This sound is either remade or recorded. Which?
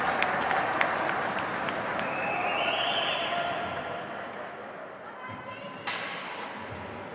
recorded